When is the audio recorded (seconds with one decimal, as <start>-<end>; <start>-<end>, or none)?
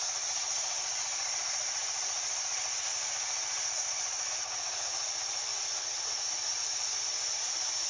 2.9-4.3